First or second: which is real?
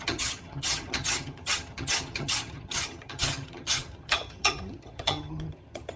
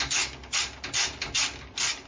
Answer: second